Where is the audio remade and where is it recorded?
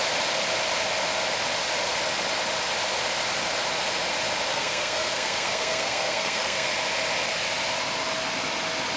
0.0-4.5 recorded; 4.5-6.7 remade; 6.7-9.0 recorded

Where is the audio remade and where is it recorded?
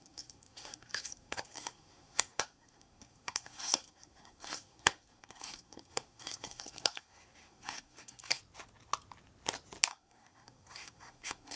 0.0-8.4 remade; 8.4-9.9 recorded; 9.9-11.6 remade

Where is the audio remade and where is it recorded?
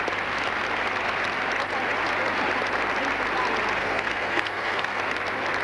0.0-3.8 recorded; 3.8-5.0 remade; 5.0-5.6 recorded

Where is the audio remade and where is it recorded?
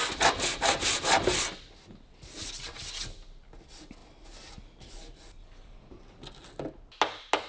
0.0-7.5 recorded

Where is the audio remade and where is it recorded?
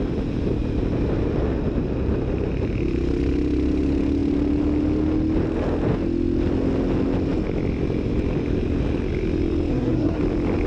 0.0-9.7 recorded; 9.7-10.2 remade; 10.2-10.7 recorded